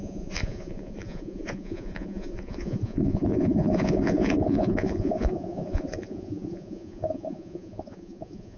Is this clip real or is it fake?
fake